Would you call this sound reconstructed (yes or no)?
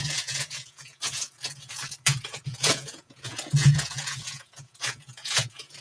yes